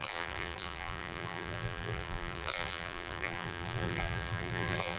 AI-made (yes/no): yes